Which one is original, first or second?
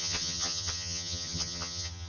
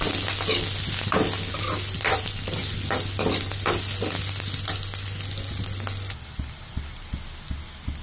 second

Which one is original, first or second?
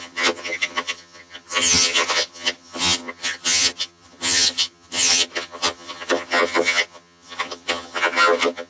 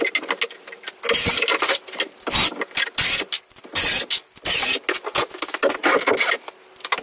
second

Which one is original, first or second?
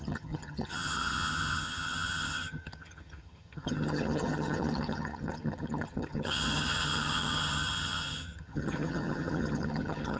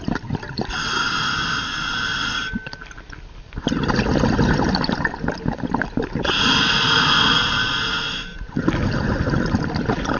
second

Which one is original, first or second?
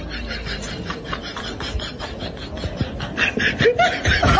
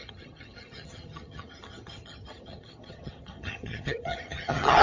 first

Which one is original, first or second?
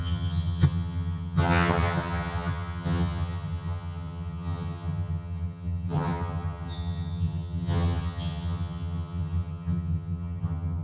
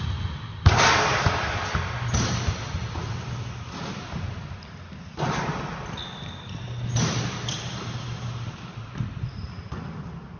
second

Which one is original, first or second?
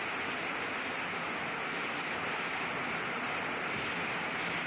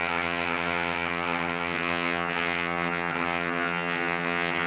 first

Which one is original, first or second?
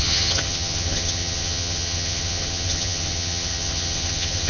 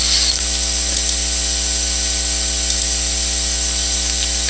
second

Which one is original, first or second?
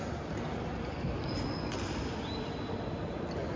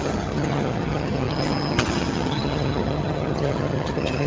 first